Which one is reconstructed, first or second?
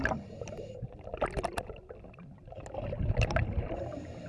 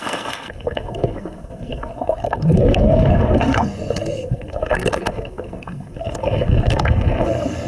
second